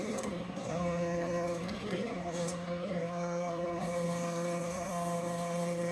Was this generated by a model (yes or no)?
yes